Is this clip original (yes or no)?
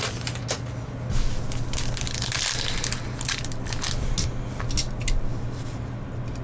yes